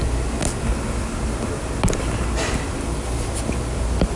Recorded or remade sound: recorded